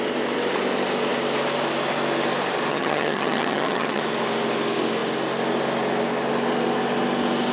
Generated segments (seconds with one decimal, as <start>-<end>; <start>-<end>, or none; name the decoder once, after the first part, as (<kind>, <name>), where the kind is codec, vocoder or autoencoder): 2.7-4.0 (vocoder, HiFi-GAN)

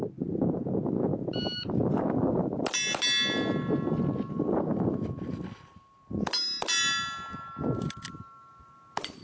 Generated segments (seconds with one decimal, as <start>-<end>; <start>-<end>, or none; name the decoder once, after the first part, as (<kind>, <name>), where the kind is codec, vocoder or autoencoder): none